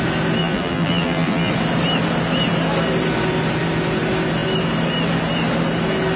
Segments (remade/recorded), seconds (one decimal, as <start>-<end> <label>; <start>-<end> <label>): 0.0-0.4 recorded; 0.4-1.5 remade; 1.5-6.2 recorded